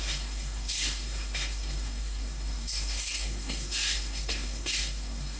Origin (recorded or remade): remade